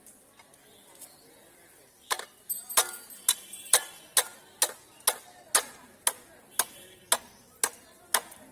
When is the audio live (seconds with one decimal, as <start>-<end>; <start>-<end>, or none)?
0.0-8.5